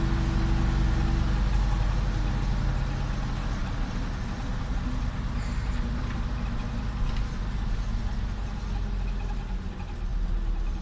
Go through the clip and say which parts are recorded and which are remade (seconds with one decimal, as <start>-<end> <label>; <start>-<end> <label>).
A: 0.0-10.8 recorded